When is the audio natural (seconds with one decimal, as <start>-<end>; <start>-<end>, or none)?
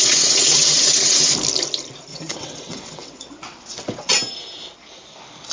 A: 1.3-2.1; 4.1-5.5